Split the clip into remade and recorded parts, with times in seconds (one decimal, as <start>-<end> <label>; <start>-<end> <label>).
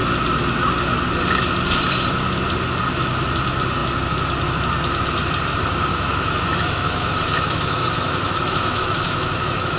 0.0-5.9 recorded; 5.9-9.8 remade